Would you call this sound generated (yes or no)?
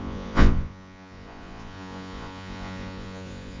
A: yes